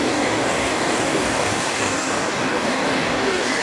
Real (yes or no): no